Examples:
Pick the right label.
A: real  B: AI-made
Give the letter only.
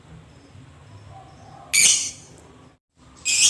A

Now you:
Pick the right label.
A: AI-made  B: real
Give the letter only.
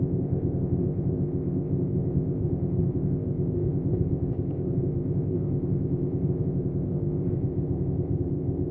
A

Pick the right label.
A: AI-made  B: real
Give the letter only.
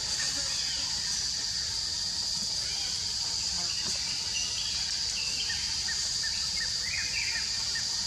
B